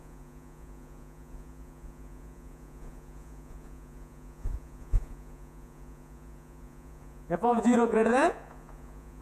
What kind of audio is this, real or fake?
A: fake